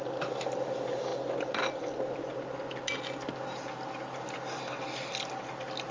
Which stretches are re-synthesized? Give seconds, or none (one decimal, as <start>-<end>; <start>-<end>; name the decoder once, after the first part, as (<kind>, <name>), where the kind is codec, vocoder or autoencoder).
none